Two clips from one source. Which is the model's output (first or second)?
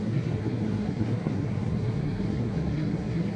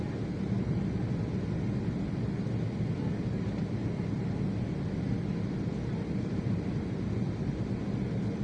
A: first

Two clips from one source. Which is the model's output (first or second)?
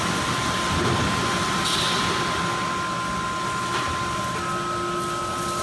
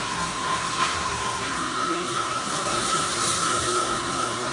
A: second